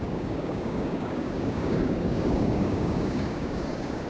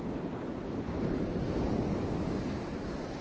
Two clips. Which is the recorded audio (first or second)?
second